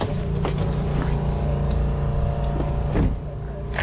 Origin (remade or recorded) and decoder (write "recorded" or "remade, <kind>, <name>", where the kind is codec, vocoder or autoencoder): recorded